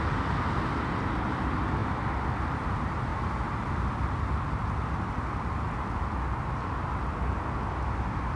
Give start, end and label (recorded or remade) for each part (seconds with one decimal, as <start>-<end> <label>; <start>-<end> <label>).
0.0-8.4 recorded